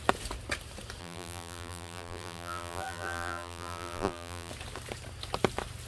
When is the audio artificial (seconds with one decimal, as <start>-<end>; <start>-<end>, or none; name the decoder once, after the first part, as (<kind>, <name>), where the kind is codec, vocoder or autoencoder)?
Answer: 1.0-4.5 (vocoder, BigVGAN v2)